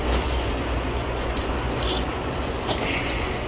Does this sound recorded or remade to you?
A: remade